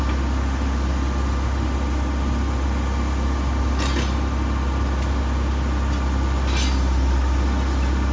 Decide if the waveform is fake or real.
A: real